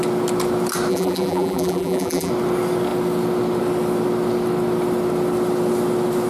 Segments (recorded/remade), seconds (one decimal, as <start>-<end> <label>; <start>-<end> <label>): 0.0-0.9 recorded; 0.9-2.3 remade; 2.3-6.3 recorded